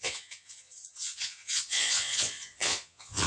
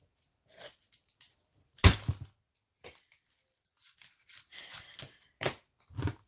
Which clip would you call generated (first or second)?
first